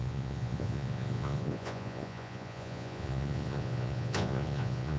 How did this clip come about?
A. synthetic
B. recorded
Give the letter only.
A